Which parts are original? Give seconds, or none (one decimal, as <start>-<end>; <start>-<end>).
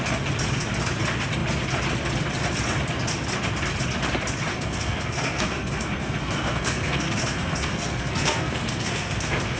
0.0-4.5